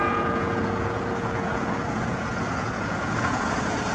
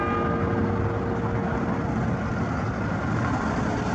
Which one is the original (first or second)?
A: second